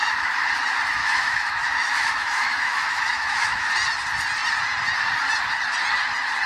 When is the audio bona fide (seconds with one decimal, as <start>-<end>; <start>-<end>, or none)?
0.5-1.0; 3.7-6.5